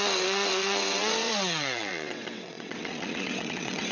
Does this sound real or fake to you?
fake